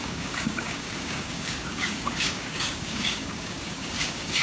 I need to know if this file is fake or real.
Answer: fake